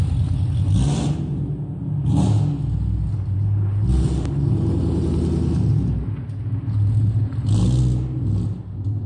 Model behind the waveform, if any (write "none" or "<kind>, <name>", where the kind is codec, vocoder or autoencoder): none